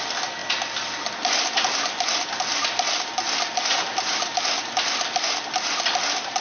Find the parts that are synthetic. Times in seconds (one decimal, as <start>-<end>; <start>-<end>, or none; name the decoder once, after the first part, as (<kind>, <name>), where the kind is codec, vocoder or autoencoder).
2.5-3.1 (vocoder, BigVGAN v2)